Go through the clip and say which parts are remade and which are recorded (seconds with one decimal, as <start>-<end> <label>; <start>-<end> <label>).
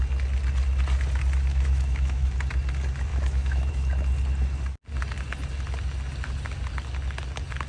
0.0-1.5 recorded; 1.5-2.3 remade; 2.3-3.1 recorded; 3.1-3.7 remade; 3.7-7.7 recorded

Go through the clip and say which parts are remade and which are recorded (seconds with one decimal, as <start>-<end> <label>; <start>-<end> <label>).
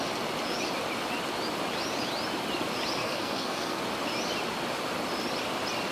0.0-3.0 recorded; 3.0-3.8 remade; 3.8-5.9 recorded